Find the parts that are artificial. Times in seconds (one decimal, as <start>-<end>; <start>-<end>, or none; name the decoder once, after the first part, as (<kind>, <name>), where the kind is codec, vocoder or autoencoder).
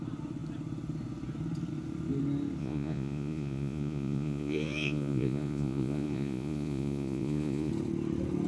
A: 2.6-7.7 (vocoder, Vocos)